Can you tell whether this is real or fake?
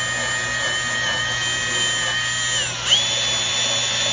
real